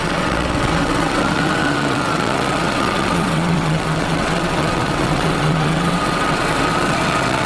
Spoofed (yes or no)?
yes